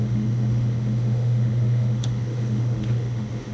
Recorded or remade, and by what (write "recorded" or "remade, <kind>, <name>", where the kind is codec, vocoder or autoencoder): remade, autoencoder, DAC-VAE